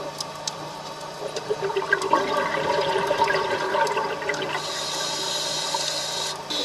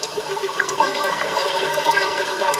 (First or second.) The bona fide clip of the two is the first